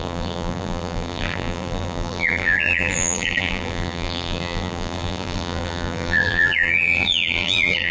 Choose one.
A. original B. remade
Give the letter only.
B